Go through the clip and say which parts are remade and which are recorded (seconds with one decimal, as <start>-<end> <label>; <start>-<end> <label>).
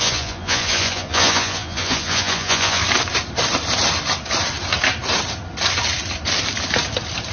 0.0-2.8 remade; 2.8-7.3 recorded